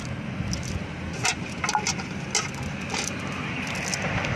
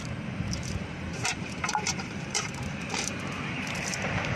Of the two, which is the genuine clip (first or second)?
first